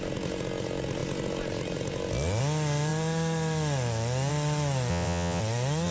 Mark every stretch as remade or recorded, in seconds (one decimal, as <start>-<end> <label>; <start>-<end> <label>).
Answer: 0.0-4.9 recorded; 4.9-5.4 remade; 5.4-5.9 recorded